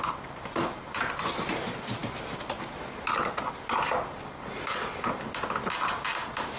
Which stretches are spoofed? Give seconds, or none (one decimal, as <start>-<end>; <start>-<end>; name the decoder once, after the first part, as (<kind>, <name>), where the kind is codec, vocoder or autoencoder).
none